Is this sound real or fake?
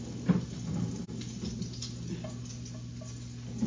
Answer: real